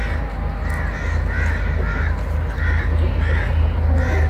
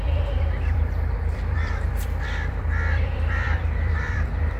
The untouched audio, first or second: first